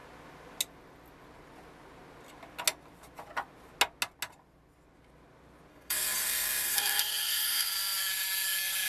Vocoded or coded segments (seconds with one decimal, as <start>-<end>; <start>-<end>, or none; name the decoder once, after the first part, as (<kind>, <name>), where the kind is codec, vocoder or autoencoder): 5.7-7.7 (codec, SNAC)

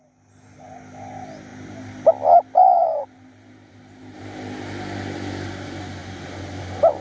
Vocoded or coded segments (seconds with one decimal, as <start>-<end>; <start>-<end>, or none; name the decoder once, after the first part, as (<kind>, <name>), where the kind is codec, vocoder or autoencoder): 1.5-2.1 (vocoder, BigVGAN v2); 2.6-4.2

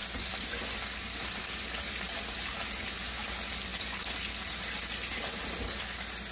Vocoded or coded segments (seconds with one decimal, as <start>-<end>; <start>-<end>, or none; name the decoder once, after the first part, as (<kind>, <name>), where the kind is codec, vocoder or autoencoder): none

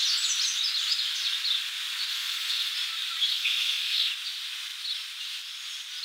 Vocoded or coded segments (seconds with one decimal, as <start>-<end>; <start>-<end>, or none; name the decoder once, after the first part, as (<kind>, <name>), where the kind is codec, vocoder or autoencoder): 2.1-2.7 (codec, SNAC); 3.3-4.1

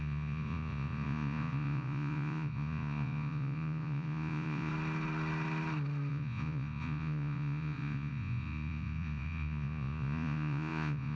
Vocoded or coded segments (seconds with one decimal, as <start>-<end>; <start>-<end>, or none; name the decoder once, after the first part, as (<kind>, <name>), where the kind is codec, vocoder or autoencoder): 0.0-4.7 (vocoder, Vocos); 6.1-11.2

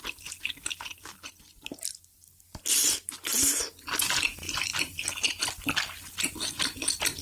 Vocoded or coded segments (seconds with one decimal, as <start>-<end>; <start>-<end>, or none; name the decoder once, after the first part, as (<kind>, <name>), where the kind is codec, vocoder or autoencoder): none